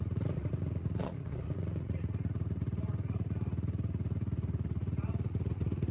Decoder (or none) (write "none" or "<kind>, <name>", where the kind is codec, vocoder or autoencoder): vocoder, Vocos